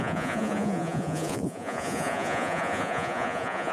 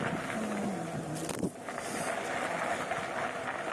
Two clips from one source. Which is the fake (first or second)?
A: first